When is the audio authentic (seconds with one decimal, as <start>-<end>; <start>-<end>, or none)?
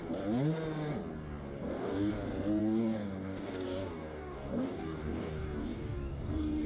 0.0-1.6; 2.1-2.6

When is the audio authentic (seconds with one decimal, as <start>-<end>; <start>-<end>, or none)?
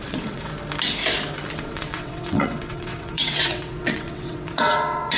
0.5-1.5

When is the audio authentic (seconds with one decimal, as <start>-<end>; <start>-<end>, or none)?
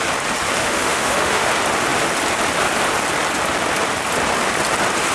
0.0-0.6; 1.5-5.1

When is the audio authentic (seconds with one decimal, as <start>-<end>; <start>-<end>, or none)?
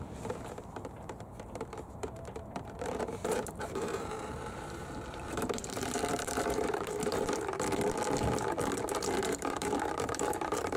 7.5-9.2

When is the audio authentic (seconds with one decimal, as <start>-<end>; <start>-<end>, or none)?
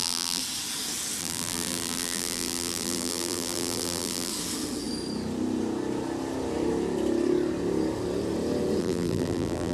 0.4-1.2; 4.3-8.8